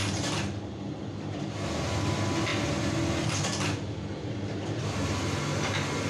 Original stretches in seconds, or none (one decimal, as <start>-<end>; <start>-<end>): none